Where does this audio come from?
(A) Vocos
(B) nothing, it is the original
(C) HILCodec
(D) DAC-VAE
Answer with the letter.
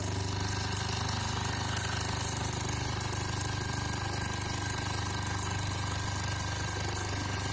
B